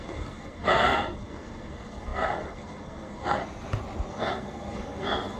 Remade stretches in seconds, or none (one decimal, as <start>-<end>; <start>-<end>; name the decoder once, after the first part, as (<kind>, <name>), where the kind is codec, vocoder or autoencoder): 0.0-3.4 (codec, SNAC); 4.1-5.4